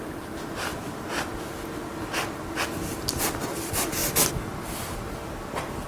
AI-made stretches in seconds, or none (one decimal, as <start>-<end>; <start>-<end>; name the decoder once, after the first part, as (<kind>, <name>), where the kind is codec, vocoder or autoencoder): none